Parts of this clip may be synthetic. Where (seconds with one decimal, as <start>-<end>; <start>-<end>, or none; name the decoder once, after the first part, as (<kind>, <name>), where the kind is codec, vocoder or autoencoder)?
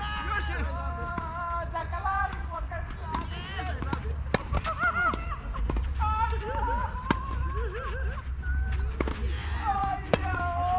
1.8-2.9 (vocoder, Vocos); 9.4-10.4